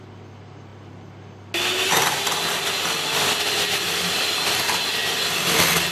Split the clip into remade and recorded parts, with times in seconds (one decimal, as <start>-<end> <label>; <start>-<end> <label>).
0.0-5.9 recorded